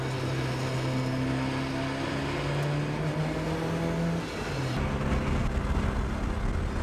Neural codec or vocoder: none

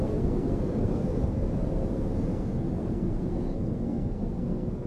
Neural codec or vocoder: codec, SNAC